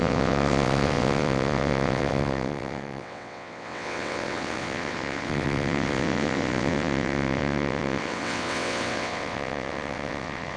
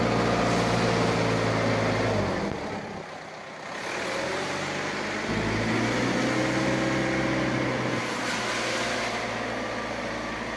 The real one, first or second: second